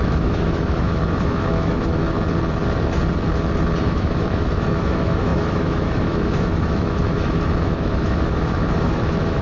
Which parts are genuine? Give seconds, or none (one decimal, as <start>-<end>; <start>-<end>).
2.0-3.9